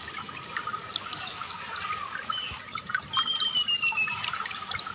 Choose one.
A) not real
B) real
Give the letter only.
B